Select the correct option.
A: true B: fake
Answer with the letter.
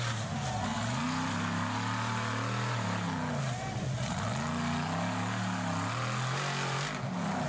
A